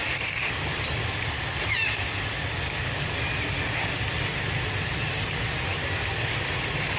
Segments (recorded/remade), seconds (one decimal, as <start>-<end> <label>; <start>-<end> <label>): 0.0-7.0 recorded